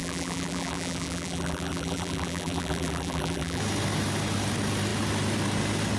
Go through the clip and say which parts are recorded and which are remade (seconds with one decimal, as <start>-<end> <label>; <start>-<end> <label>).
0.0-3.6 remade; 3.6-6.0 recorded